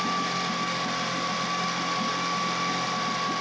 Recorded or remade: recorded